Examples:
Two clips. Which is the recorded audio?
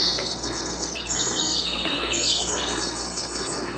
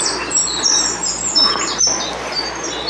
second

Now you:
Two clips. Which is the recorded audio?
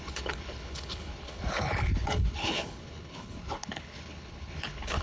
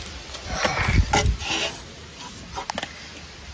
second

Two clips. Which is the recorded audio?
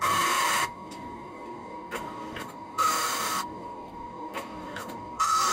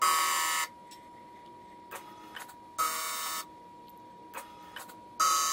second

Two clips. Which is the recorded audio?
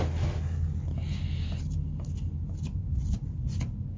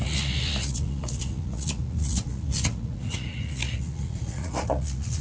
first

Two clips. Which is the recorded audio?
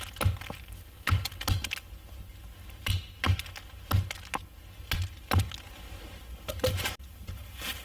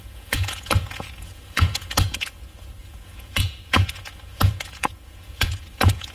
first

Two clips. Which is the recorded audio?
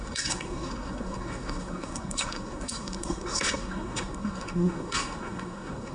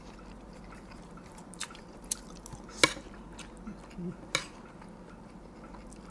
second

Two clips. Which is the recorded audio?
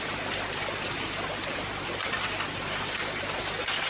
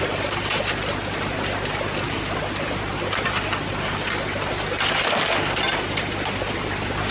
second